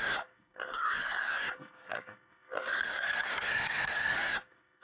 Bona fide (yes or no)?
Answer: no